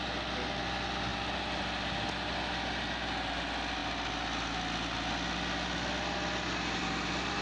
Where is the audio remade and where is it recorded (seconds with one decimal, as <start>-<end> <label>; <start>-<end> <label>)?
0.0-7.4 recorded